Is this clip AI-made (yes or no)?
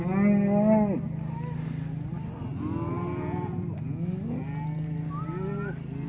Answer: no